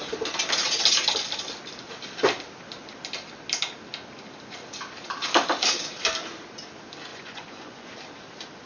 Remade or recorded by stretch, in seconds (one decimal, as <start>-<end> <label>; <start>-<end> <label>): 0.0-7.1 recorded; 7.1-7.9 remade; 7.9-8.7 recorded